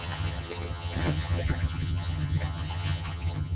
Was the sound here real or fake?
fake